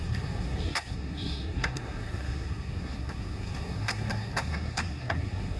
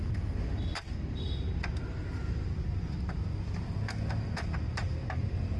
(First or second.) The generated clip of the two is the first